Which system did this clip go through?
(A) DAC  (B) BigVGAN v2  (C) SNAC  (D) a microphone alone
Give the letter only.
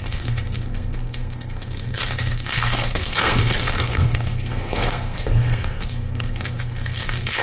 C